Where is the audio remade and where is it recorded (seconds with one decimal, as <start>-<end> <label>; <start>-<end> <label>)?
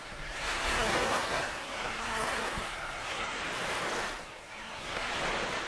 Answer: 0.0-3.4 remade; 3.4-4.2 recorded; 4.2-5.1 remade; 5.1-5.7 recorded